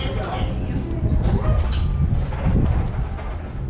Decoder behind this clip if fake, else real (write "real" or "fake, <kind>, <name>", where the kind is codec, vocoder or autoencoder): real